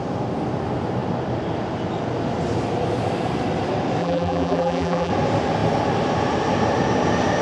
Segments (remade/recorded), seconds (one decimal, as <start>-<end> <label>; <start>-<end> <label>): 0.0-4.0 recorded; 4.0-5.1 remade; 5.1-7.4 recorded